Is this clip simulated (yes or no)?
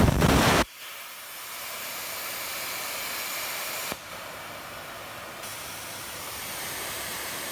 yes